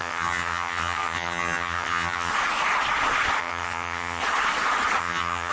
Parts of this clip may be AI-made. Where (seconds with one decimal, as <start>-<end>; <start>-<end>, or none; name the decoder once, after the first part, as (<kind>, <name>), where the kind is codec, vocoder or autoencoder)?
0.0-2.3 (vocoder, HiFi-GAN); 3.4-4.2; 5.0-5.5